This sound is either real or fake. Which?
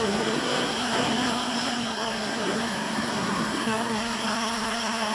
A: fake